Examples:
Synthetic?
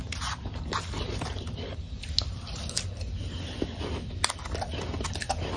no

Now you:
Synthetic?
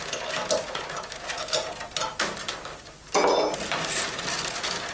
no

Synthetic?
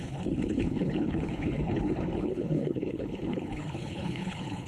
yes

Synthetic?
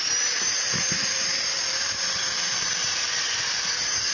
yes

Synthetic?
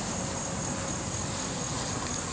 no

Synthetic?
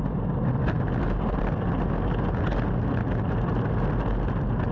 no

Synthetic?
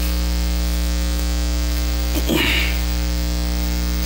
yes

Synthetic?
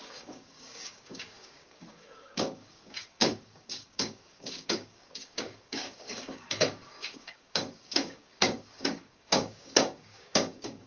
yes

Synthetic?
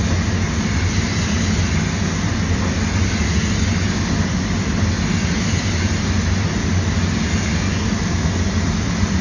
no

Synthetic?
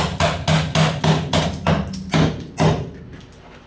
no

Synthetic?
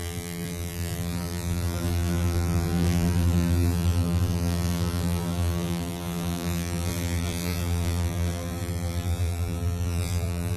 yes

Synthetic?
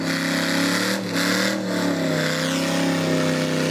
no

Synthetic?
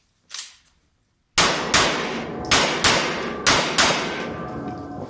no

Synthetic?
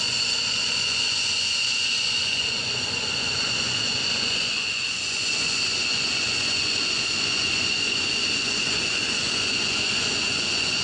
yes